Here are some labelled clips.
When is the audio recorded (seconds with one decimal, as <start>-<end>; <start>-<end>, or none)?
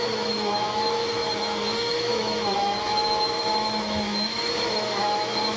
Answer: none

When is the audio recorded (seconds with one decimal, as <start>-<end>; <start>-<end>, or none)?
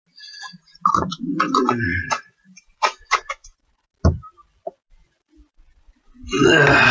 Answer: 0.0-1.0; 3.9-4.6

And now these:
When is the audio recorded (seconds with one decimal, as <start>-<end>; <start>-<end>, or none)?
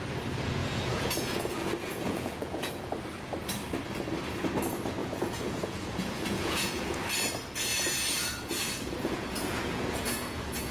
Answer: 0.0-0.6; 2.7-5.0; 7.0-7.7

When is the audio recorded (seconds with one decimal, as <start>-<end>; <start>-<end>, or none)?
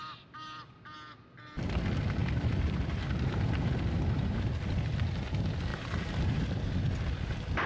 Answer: 0.0-2.2; 4.4-5.7; 6.7-7.7